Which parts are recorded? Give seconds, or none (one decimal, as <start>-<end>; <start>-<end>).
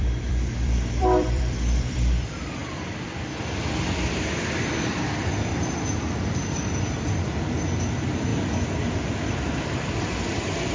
5.5-7.9